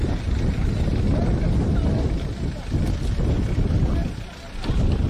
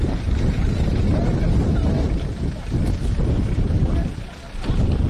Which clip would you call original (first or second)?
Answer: first